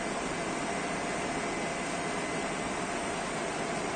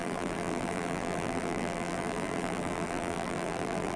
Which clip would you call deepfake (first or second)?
second